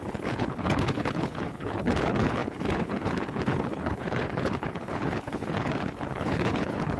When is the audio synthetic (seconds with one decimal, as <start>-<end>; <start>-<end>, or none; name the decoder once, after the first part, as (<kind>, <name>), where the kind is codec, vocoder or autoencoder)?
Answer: 0.0-7.0 (codec, HILCodec)